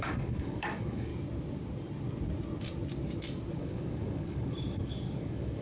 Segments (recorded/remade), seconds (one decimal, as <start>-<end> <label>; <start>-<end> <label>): 0.0-1.1 remade; 1.1-3.5 recorded; 3.5-5.6 remade